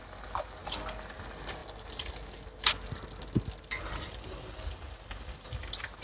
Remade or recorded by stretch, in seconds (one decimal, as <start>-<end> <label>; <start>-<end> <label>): 0.0-6.0 recorded